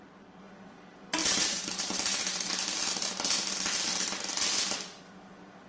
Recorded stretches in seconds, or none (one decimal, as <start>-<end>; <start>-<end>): 0.0-1.2; 2.5-5.7